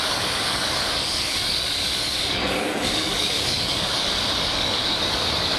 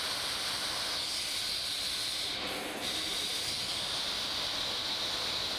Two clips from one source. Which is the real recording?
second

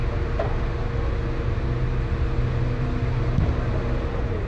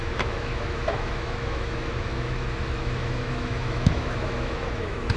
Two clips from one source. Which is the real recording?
first